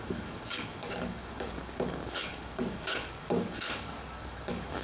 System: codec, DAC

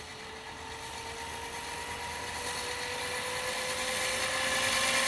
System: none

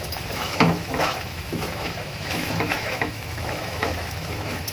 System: autoencoder, DAC-VAE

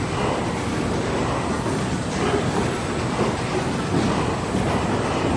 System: none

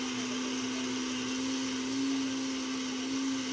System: none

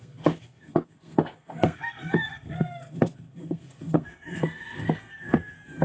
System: codec, SNAC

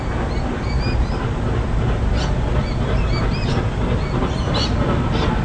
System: none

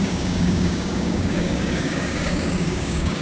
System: codec, DAC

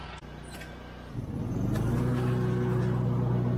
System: none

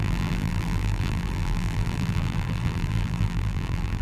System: vocoder, BigVGAN v2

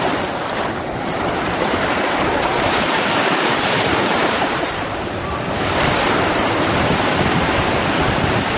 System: vocoder, BigVGAN v2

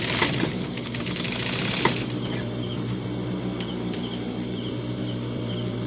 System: vocoder, BigVGAN v2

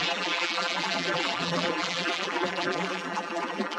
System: vocoder, BigVGAN v2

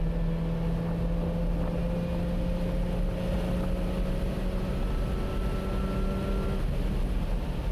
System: none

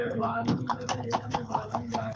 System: codec, HILCodec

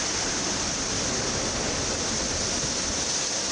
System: none